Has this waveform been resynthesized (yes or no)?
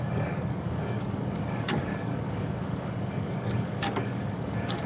yes